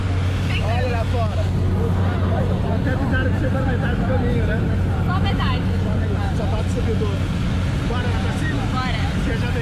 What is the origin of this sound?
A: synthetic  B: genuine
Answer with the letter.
B